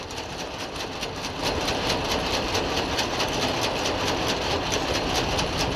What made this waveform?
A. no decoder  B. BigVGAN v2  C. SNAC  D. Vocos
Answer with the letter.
A